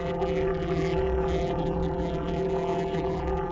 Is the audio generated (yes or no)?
yes